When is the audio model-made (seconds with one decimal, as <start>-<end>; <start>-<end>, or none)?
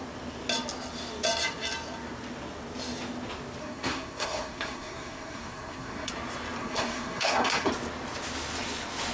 3.6-6.1; 6.6-7.7